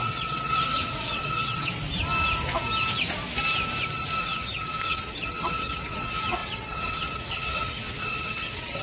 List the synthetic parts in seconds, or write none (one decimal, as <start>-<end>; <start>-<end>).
0.0-1.7; 4.2-8.8